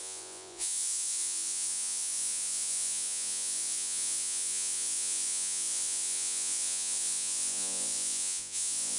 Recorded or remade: remade